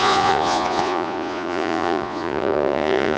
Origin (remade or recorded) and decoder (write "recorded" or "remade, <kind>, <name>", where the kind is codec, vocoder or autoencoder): remade, vocoder, Vocos